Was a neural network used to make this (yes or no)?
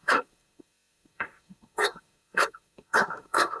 yes